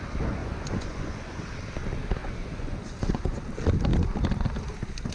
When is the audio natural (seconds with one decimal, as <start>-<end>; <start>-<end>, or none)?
0.0-0.4; 1.4-2.2; 3.4-5.1